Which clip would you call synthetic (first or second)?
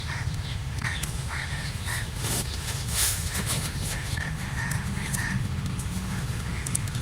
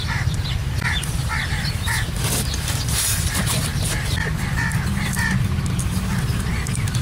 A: first